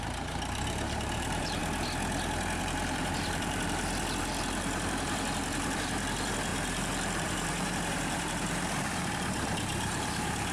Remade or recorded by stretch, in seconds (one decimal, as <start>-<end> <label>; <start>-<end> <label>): 0.0-1.6 remade; 1.6-2.6 recorded; 2.6-10.5 remade

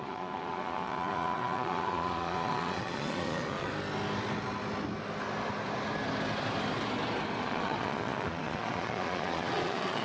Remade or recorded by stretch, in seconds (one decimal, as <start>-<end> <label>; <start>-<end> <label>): 0.0-3.7 remade; 3.7-7.4 recorded; 7.4-10.0 remade

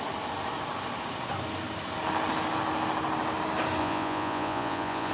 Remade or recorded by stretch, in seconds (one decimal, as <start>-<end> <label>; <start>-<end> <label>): 0.0-3.8 recorded; 3.8-5.1 remade

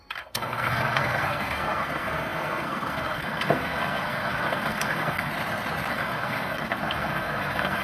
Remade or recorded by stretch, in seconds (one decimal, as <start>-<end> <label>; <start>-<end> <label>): 0.0-5.3 remade; 5.3-5.9 recorded; 5.9-7.8 remade

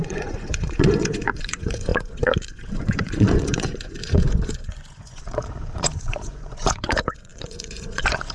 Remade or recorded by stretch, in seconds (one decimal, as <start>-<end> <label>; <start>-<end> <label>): 0.0-8.3 remade

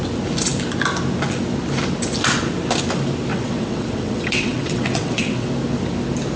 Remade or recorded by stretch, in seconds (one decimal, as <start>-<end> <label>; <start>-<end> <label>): 0.0-3.3 recorded; 3.3-5.5 remade; 5.5-6.4 recorded